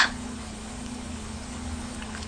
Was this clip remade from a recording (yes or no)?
yes